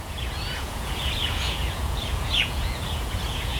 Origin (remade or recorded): remade